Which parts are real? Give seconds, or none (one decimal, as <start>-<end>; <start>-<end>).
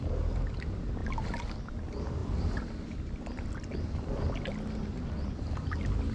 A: 0.0-2.2; 4.2-6.1